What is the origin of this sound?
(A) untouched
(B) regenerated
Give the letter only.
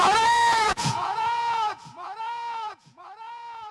B